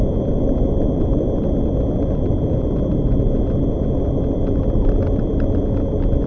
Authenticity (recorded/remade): recorded